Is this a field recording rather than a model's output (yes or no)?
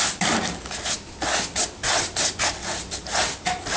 yes